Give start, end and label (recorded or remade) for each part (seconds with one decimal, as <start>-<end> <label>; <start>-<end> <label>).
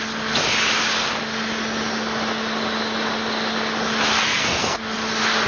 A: 0.0-4.1 recorded; 4.1-4.8 remade; 4.8-5.5 recorded